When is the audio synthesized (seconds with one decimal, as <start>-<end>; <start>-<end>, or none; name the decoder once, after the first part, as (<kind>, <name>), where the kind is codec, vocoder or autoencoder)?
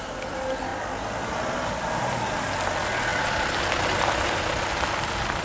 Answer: 3.1-3.6 (vocoder, BigVGAN v2)